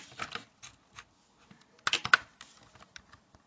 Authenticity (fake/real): real